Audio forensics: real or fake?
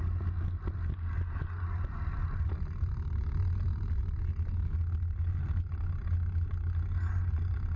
real